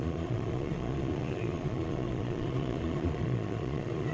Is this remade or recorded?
remade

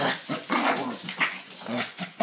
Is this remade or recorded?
remade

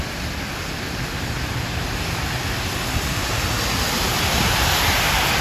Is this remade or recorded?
recorded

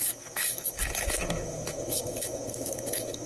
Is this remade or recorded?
remade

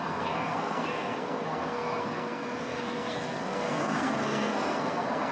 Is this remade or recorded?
remade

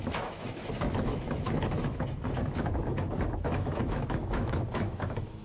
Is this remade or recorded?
remade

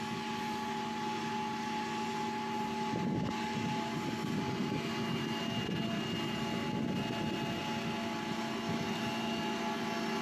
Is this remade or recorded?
recorded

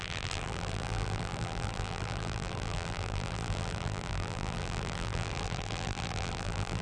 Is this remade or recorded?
remade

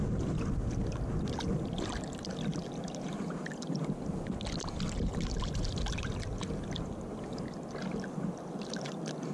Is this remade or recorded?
recorded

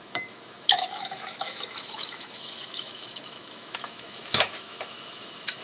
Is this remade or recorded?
remade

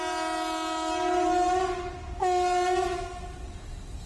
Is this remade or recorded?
recorded